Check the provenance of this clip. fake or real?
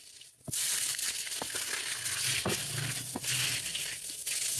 real